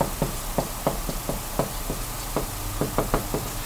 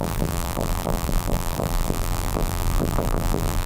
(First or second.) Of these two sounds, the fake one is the second